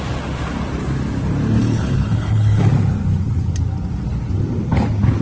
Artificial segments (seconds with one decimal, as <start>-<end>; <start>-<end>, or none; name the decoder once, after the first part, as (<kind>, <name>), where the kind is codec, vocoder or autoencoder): 1.6-2.7 (codec, HILCodec)